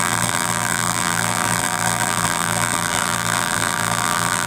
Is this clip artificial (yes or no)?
yes